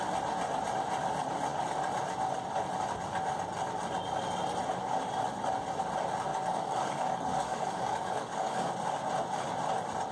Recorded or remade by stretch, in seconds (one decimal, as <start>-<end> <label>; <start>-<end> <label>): 0.0-6.3 recorded; 6.3-8.7 remade; 8.7-10.1 recorded